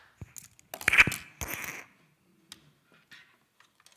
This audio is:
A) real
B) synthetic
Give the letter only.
A